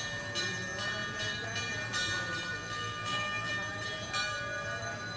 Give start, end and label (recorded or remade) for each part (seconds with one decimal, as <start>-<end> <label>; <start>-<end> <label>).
0.0-2.5 recorded; 2.5-3.5 remade; 3.5-5.2 recorded